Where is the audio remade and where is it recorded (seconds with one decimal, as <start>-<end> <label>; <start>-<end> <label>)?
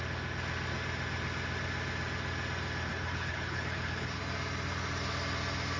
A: 0.0-2.9 recorded; 2.9-4.2 remade; 4.2-5.8 recorded